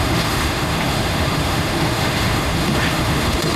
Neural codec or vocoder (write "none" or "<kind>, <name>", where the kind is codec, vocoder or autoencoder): autoencoder, DAC-VAE